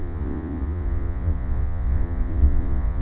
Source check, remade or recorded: remade